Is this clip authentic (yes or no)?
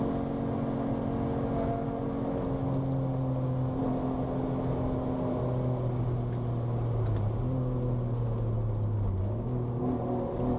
yes